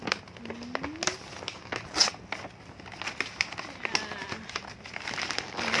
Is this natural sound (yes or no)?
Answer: yes